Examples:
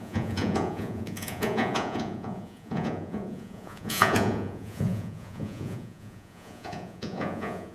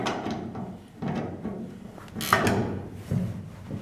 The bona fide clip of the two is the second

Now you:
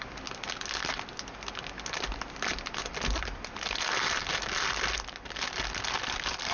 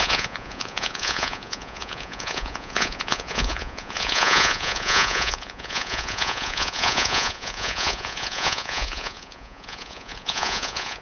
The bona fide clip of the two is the first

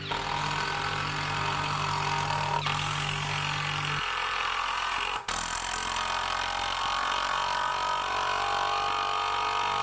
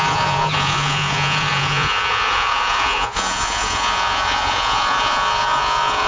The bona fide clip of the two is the first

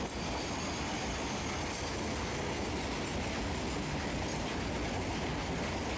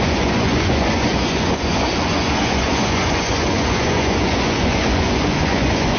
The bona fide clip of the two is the first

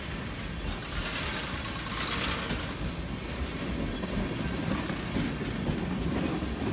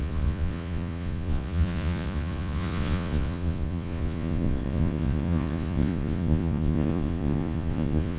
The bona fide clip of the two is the first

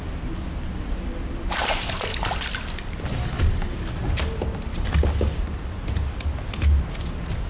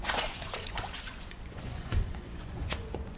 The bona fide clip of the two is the first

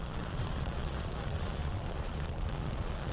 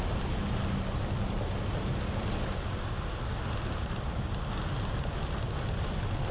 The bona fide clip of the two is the second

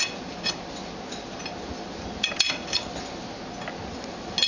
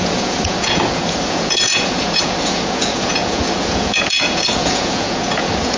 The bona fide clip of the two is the first